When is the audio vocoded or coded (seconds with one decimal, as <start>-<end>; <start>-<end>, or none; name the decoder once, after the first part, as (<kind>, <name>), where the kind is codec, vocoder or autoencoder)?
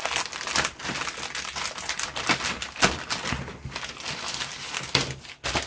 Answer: none